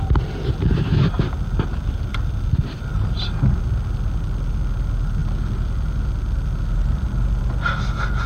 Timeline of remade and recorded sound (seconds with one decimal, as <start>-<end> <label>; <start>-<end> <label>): 0.0-8.3 recorded